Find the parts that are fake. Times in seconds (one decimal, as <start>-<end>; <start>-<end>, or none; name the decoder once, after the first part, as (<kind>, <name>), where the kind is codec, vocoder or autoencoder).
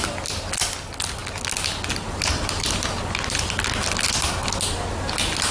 none